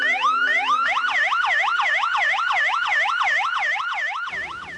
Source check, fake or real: fake